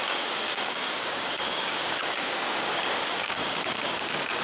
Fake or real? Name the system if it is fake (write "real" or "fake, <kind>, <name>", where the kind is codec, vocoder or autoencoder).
fake, codec, DAC